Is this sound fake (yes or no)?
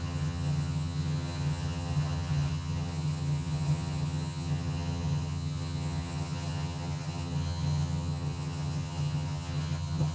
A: yes